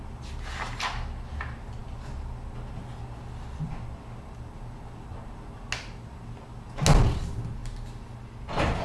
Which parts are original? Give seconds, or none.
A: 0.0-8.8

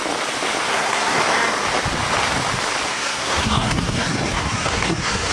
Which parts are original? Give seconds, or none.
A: 0.0-0.7; 1.2-2.9